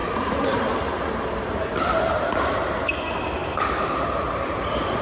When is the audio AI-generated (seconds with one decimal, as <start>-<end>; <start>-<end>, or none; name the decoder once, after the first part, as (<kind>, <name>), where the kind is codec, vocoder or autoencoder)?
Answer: 0.0-2.4 (vocoder, BigVGAN v2); 3.4-5.0